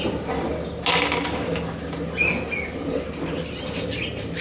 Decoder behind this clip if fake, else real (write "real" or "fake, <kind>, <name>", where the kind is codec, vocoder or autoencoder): real